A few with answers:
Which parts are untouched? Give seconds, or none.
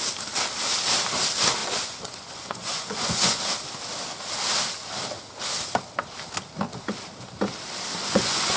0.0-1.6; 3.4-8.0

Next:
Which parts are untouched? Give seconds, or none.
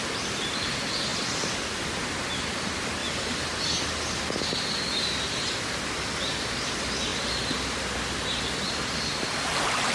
0.0-9.9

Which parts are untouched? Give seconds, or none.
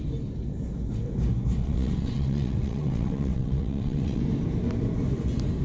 0.0-1.6; 4.2-5.6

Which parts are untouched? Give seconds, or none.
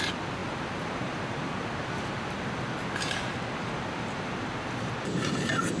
0.0-5.8